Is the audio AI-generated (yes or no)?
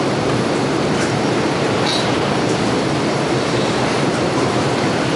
yes